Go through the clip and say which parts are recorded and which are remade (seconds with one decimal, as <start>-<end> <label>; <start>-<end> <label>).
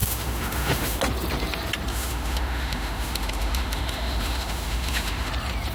0.0-1.0 remade; 1.0-1.9 recorded; 1.9-5.3 remade; 5.3-5.7 recorded